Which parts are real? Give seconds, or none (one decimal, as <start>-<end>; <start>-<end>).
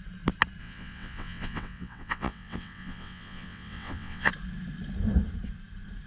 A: 0.0-0.6; 4.3-6.1